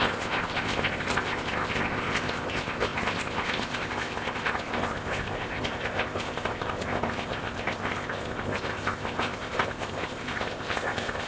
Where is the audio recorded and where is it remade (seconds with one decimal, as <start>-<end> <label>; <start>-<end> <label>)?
0.0-11.3 remade